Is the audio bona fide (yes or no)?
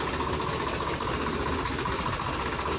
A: yes